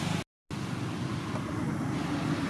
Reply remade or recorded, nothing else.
recorded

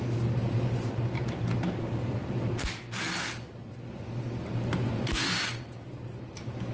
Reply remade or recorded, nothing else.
recorded